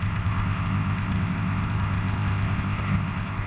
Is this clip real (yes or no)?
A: no